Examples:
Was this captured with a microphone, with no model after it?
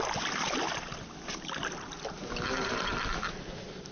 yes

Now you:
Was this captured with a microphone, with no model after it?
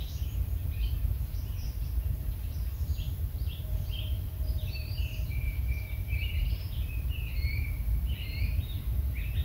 no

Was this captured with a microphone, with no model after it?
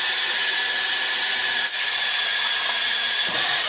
no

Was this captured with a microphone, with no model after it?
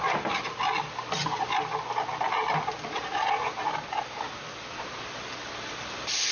yes